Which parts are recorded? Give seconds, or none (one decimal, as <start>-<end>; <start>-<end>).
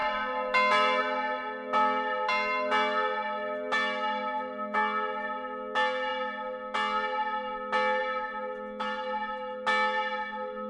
0.0-10.7